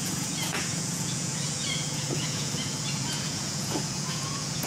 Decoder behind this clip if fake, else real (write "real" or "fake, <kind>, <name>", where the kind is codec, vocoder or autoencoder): fake, vocoder, Vocos